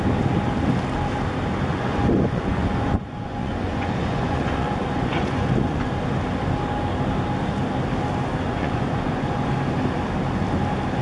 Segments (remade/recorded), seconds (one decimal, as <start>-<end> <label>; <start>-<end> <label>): 0.0-1.7 recorded; 1.7-5.9 remade; 5.9-8.5 recorded; 8.5-9.5 remade; 9.5-11.0 recorded